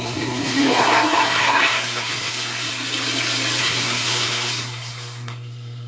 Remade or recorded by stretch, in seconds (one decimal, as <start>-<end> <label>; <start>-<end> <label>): 0.0-2.7 remade; 2.7-3.6 recorded; 3.6-5.9 remade